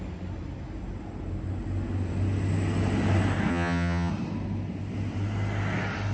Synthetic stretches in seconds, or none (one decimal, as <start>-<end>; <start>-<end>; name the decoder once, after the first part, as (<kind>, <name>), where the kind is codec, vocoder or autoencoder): 3.5-4.1 (vocoder, HiFi-GAN)